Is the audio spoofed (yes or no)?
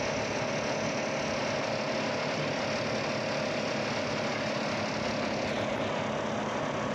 no